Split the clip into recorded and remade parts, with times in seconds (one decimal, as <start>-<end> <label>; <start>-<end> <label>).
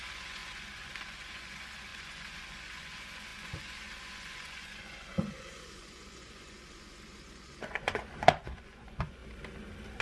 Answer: 0.0-9.2 remade; 9.2-10.0 recorded